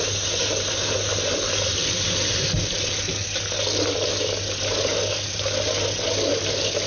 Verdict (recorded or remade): recorded